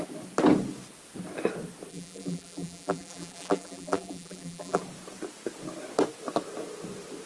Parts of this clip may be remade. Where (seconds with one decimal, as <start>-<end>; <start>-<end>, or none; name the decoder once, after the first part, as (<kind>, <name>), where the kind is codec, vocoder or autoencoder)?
1.9-4.8 (vocoder, BigVGAN v2)